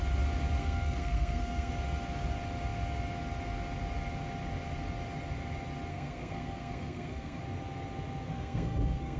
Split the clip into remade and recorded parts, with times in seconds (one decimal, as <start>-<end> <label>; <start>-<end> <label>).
0.0-0.6 recorded; 0.6-1.7 remade; 1.7-5.9 recorded; 5.9-7.4 remade; 7.4-8.3 recorded; 8.3-9.2 remade

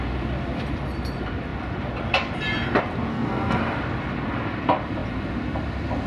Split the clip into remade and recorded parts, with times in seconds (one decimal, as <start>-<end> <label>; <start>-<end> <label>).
0.0-3.1 recorded; 3.1-3.6 remade; 3.6-6.1 recorded

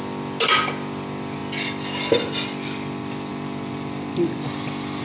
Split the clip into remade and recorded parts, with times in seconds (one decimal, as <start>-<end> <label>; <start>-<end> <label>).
0.0-5.0 recorded

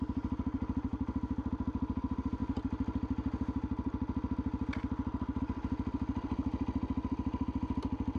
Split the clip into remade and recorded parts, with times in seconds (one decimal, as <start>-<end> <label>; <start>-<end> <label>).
0.0-8.2 recorded

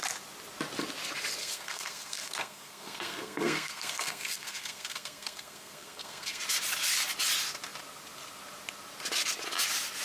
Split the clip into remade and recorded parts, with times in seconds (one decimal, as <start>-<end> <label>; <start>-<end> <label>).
0.0-1.4 recorded; 1.4-6.4 remade; 6.4-10.0 recorded

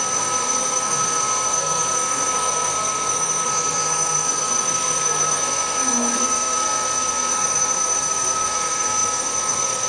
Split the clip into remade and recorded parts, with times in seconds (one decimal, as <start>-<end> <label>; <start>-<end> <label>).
0.0-9.9 remade

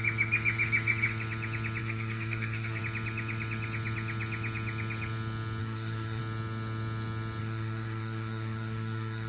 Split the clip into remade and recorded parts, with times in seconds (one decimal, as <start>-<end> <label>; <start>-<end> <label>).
0.0-1.8 recorded; 1.8-2.8 remade; 2.8-5.6 recorded; 5.6-6.2 remade; 6.2-7.4 recorded; 7.4-9.3 remade

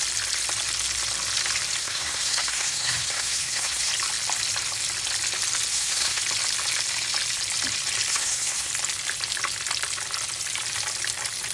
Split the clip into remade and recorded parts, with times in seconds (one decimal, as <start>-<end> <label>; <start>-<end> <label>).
0.0-1.8 recorded; 1.8-3.9 remade; 3.9-5.7 recorded; 5.7-6.2 remade; 6.2-8.1 recorded; 8.1-8.7 remade; 8.7-11.5 recorded